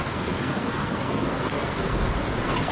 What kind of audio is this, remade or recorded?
remade